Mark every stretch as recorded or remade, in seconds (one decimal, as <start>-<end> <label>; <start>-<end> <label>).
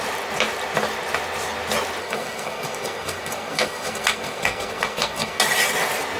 0.0-2.0 recorded; 2.0-5.4 remade; 5.4-6.2 recorded